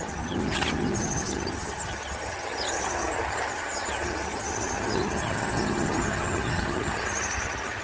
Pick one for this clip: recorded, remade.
remade